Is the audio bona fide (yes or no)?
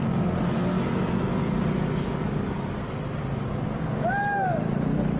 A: yes